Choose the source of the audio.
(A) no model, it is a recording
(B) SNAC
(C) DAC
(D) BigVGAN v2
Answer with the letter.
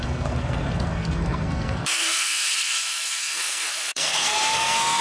B